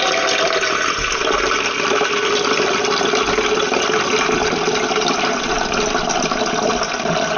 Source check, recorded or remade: recorded